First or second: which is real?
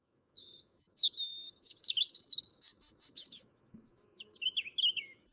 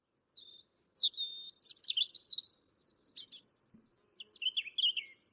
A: second